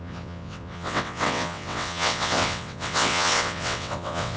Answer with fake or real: fake